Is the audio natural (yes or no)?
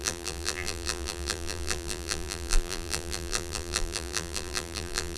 no